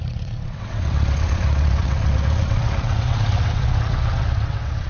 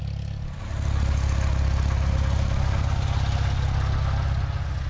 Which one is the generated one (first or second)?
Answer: first